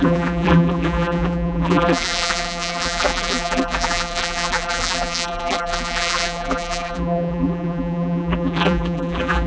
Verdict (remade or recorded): remade